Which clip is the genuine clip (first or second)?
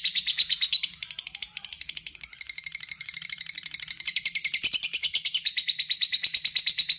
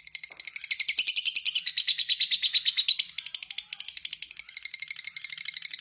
second